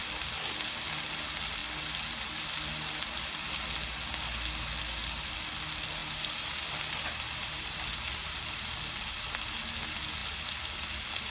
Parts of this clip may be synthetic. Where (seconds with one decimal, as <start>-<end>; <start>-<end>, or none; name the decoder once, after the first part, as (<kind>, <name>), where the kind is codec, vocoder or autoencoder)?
none

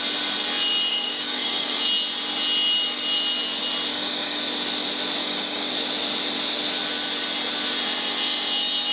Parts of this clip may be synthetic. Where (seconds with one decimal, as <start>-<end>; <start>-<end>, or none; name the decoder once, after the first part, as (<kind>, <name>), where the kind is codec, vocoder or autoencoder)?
0.9-1.8 (codec, DAC); 3.9-4.4; 5.2-5.7

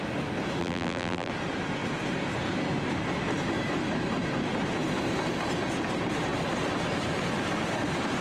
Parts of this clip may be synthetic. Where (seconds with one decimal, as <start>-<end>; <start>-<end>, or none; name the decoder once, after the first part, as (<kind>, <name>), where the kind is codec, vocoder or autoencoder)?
0.6-1.3 (vocoder, BigVGAN v2)

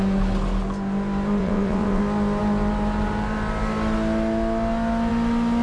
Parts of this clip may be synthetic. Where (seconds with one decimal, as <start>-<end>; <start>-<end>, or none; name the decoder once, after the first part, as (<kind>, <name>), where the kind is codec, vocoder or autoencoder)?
1.4-2.0 (vocoder, WaveNeXt)

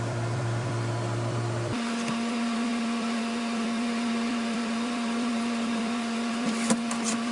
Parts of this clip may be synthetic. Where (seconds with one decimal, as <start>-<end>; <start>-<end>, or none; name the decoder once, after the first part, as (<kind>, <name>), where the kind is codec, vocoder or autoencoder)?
0.0-7.3 (vocoder, BigVGAN v2)

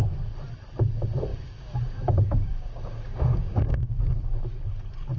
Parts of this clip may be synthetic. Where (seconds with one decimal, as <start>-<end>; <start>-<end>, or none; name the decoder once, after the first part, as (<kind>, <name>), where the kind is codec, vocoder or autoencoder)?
1.3-4.4 (codec, DAC)

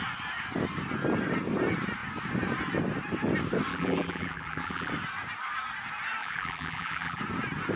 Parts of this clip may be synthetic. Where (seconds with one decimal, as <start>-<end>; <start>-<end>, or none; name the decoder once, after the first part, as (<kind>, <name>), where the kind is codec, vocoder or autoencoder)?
3.7-4.9 (vocoder, BigVGAN v2); 6.2-7.2